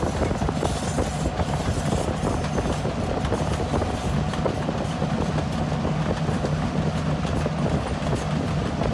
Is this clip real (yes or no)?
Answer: yes